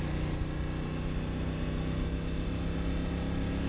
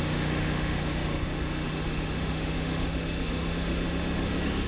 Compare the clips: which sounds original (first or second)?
first